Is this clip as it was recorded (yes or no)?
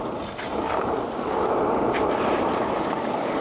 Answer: yes